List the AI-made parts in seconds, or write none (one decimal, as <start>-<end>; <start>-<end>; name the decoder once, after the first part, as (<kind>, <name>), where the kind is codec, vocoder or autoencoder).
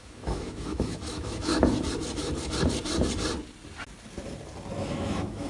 0.0-1.5 (autoencoder, DAC-VAE); 4.8-5.5